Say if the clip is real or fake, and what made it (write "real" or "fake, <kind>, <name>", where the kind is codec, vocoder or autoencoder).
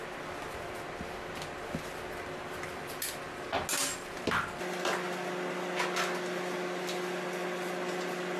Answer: real